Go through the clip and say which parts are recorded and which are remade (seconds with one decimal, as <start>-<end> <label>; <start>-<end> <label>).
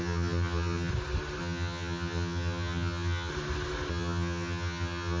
0.0-0.9 remade; 0.9-1.4 recorded; 1.4-3.3 remade; 3.3-3.9 recorded; 3.9-5.2 remade